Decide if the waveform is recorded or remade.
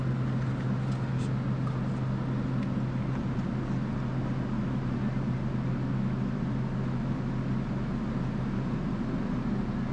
recorded